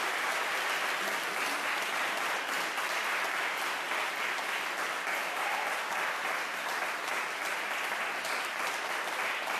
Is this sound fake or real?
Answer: real